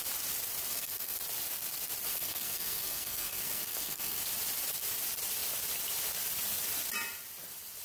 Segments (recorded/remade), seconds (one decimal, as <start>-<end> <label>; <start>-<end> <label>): 0.0-0.7 recorded; 0.7-1.2 remade; 1.2-2.1 recorded; 2.1-4.2 remade; 4.2-7.8 recorded